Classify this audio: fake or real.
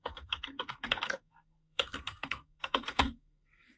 fake